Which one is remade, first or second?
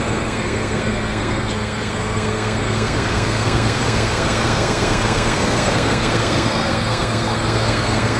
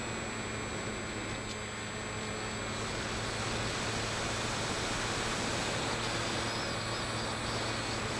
first